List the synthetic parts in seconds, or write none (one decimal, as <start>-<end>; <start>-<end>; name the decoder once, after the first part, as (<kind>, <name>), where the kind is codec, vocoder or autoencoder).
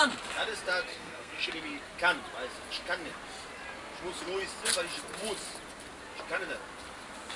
0.9-1.5 (codec, SNAC)